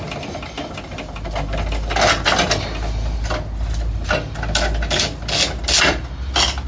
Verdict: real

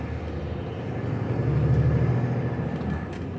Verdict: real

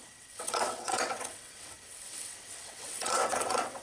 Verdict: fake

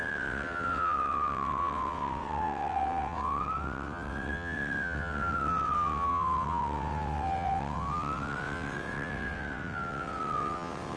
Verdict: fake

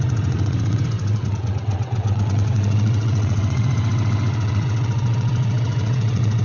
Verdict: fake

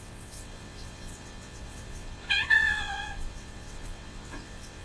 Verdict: fake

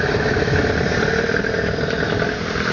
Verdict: real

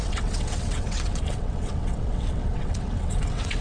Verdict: fake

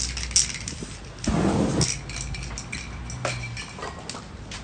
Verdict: real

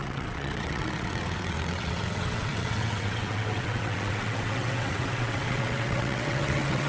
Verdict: fake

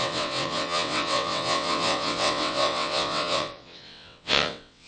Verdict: fake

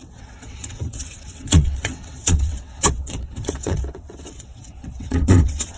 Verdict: fake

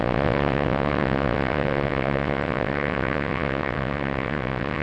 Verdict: fake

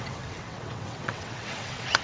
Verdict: fake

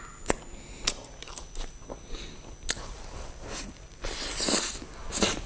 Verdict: real